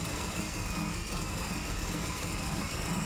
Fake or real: fake